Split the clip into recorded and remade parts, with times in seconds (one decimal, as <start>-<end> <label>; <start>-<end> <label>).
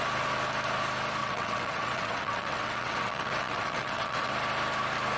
0.0-1.2 recorded; 1.2-4.3 remade; 4.3-5.2 recorded